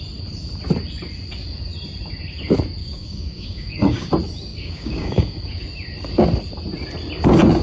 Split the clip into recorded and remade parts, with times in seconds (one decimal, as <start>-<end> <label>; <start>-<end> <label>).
0.0-2.8 recorded; 2.8-4.1 remade; 4.1-4.5 recorded; 4.5-5.4 remade; 5.4-7.6 recorded